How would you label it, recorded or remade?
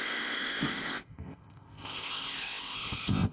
remade